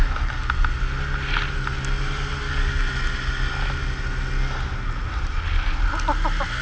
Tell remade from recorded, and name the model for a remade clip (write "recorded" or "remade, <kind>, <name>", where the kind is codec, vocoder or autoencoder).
recorded